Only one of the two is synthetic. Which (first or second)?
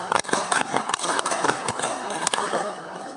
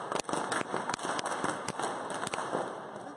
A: first